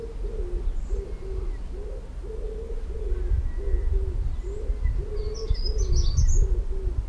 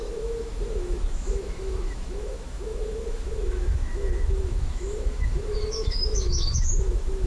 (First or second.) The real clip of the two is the first